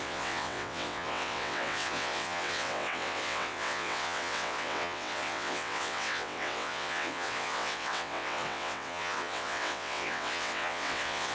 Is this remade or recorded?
remade